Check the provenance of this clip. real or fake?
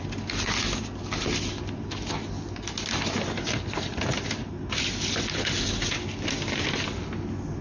real